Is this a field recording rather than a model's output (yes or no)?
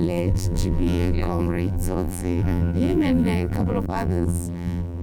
no